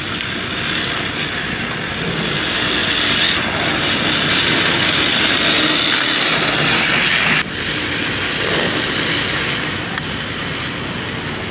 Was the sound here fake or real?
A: real